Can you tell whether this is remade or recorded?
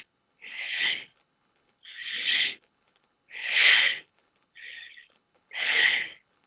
remade